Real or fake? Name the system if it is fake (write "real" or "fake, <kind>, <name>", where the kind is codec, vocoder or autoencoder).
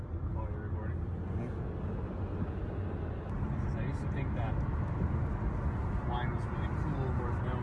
real